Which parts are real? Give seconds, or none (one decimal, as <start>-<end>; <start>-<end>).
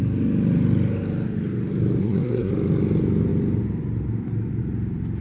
0.0-2.0; 2.5-5.2